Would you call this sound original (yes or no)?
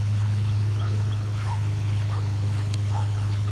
no